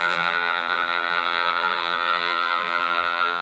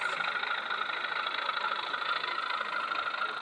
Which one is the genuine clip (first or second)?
second